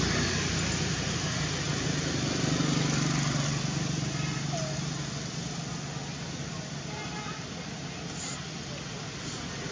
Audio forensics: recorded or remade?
recorded